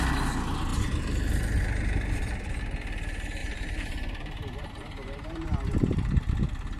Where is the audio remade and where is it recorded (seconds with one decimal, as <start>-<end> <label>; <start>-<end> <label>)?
0.0-3.4 recorded; 3.4-6.3 remade; 6.3-6.8 recorded